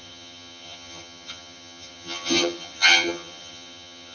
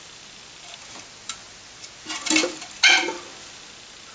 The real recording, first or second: second